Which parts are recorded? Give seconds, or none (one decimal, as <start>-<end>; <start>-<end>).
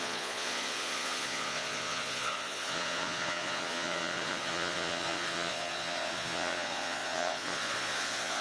none